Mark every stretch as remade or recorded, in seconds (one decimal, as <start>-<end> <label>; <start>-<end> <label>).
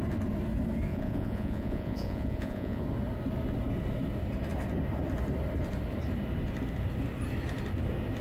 0.0-0.9 recorded; 0.9-2.8 remade; 2.8-8.2 recorded